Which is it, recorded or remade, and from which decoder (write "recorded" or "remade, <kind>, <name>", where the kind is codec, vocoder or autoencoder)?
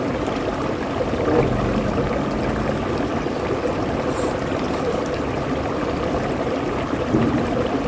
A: recorded